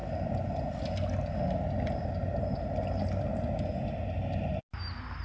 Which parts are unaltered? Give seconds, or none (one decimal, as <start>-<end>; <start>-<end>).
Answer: 0.0-5.2